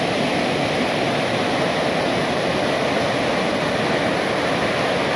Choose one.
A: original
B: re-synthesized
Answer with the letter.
A